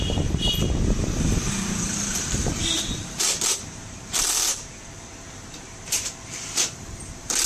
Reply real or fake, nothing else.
fake